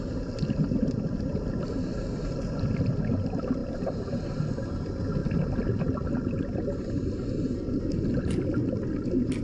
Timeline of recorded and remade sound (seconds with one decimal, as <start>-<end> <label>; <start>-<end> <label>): 0.0-3.6 recorded; 3.6-4.2 remade; 4.2-9.4 recorded